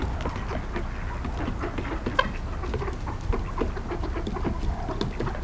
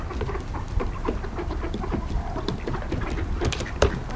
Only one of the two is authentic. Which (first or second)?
first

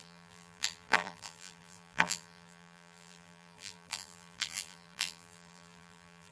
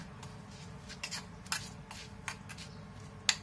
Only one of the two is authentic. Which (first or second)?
second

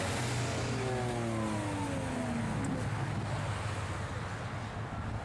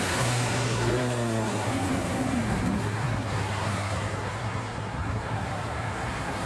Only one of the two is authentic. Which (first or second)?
first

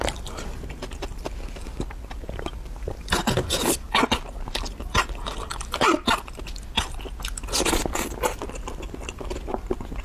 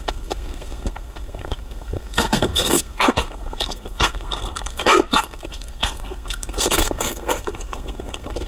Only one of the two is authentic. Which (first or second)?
first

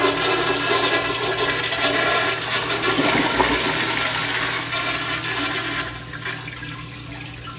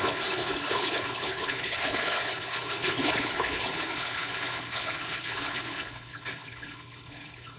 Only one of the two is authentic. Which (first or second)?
first